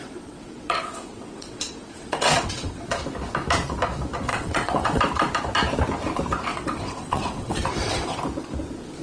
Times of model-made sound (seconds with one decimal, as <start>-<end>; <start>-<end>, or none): 0.0-2.9; 4.3-5.0; 6.5-8.2